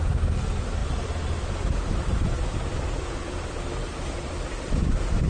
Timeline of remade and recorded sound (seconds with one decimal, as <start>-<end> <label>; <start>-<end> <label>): 0.0-5.3 recorded